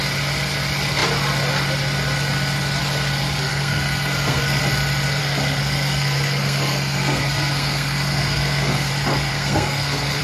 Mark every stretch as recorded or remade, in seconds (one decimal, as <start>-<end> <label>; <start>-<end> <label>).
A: 0.0-3.5 recorded; 3.5-4.6 remade; 4.6-5.2 recorded; 5.2-8.9 remade; 8.9-9.3 recorded; 9.3-10.2 remade